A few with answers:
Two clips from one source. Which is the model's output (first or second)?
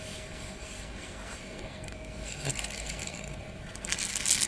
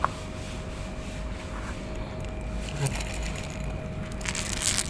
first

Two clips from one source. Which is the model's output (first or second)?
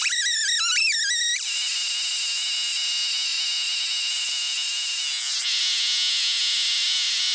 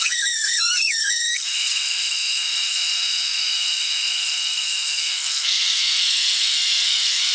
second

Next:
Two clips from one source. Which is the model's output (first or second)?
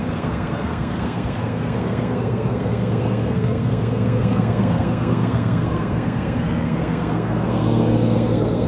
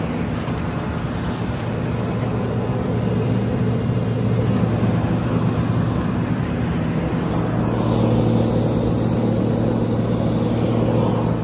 first